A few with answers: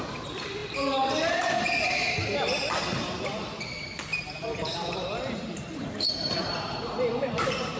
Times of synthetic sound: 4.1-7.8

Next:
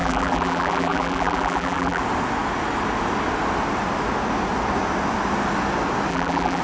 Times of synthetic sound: 0.0-2.0; 6.1-6.6

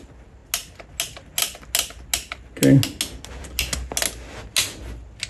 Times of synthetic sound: none

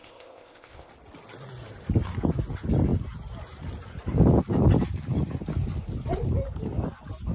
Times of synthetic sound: 0.0-0.9